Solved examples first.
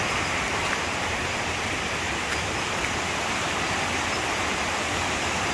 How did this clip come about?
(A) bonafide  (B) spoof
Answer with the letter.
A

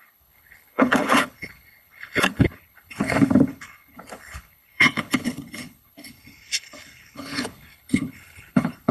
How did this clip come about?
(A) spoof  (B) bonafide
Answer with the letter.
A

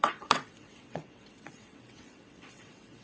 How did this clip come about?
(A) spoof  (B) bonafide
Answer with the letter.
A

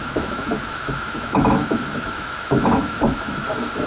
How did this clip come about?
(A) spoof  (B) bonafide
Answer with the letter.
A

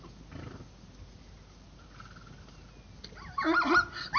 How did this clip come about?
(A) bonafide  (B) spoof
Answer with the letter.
A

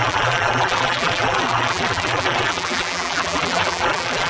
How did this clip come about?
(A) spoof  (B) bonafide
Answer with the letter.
A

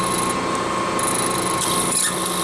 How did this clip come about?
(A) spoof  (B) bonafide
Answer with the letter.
B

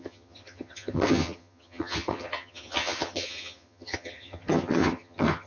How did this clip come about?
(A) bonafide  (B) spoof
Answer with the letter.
B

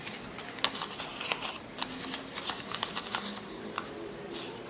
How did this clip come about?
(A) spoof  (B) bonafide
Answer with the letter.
B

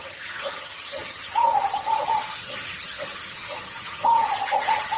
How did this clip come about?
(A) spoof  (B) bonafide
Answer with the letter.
A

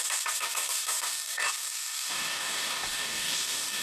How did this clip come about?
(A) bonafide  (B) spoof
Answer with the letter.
B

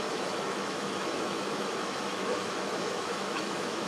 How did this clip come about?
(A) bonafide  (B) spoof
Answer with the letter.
B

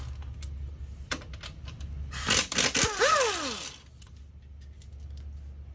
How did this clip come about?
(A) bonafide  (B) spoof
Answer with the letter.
A